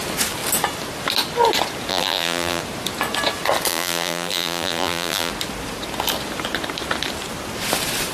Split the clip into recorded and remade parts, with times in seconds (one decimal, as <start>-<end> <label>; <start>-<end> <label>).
0.0-1.9 recorded; 1.9-2.6 remade; 2.6-3.7 recorded; 3.7-5.3 remade; 5.3-8.1 recorded